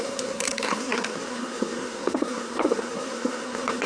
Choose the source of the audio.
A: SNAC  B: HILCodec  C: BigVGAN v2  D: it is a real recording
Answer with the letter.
A